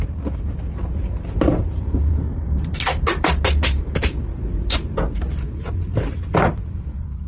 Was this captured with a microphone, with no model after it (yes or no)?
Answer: no